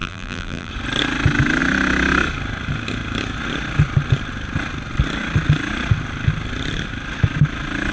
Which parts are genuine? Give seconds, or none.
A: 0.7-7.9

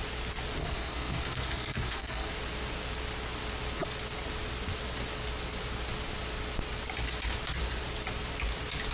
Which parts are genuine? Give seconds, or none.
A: 0.0-0.6; 2.3-8.9

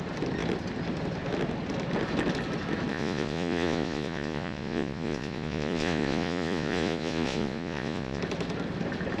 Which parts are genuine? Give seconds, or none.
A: 0.0-2.9; 8.2-9.2

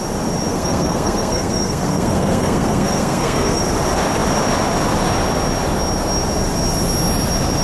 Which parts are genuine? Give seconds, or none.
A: 0.0-0.5; 3.6-7.6